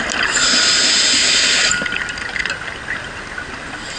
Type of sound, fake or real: real